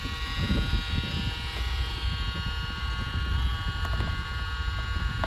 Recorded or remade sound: recorded